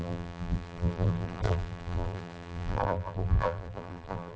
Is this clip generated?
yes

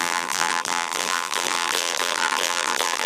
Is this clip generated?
yes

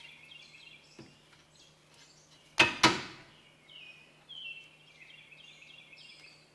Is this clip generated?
no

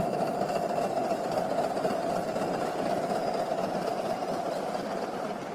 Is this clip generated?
no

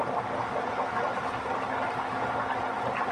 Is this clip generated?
no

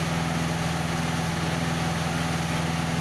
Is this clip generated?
no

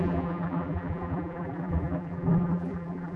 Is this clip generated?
yes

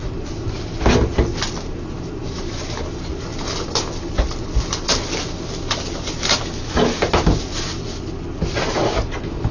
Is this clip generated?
no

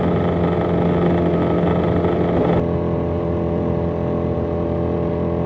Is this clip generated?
no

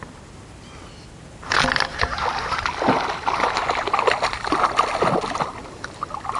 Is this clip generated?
no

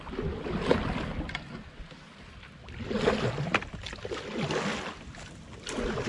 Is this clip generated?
no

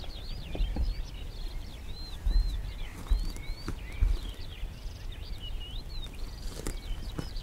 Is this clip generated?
no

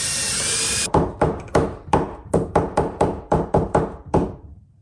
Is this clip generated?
yes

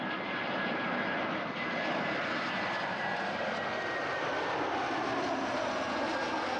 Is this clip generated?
yes